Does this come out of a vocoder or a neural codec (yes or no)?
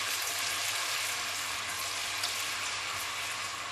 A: no